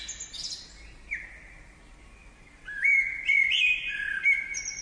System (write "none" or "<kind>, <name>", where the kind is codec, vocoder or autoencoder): none